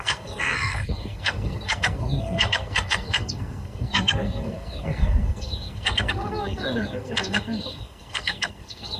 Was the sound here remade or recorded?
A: remade